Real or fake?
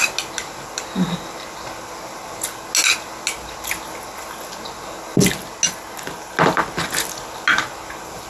real